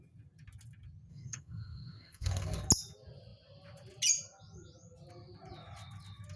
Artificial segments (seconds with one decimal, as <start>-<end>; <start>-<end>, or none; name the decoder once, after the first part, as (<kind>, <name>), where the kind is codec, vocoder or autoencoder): 1.1-2.7 (codec, SNAC)